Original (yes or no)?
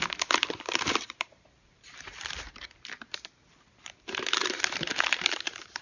no